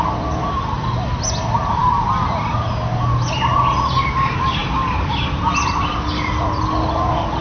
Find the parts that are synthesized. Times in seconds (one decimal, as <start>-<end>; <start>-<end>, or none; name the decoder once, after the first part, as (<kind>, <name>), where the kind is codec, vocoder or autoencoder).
none